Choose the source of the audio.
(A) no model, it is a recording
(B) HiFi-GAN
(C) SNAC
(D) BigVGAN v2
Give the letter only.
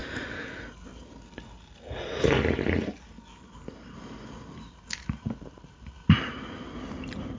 A